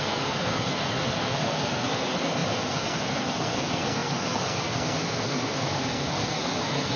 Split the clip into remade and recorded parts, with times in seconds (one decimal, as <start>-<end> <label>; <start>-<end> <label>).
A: 0.0-7.0 remade